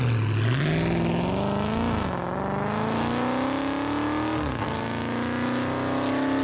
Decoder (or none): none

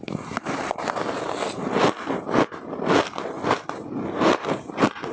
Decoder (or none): none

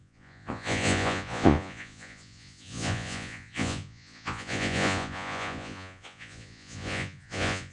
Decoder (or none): vocoder, Vocos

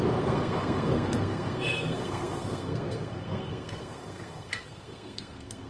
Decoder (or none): codec, SNAC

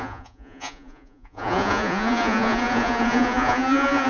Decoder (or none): vocoder, Vocos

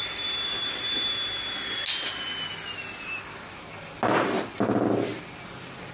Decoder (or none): none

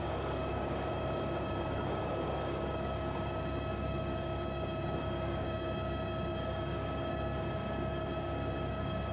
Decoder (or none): codec, DAC